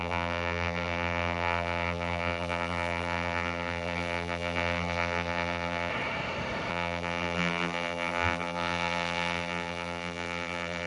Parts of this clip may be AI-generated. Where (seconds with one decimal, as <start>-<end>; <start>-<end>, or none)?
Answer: 0.0-5.9; 6.7-10.9